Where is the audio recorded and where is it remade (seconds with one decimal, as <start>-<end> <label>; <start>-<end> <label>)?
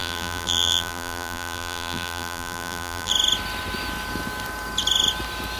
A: 0.0-3.1 remade; 3.1-5.6 recorded